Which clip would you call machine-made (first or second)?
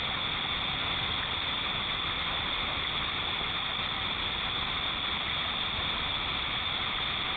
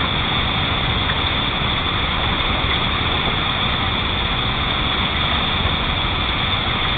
second